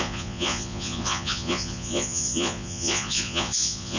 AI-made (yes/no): yes